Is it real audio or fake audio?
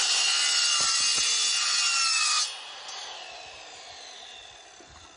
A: real